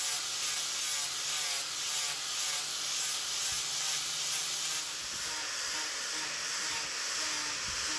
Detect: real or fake real